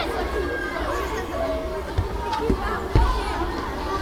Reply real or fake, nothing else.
real